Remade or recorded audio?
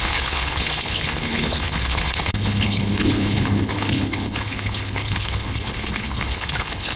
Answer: remade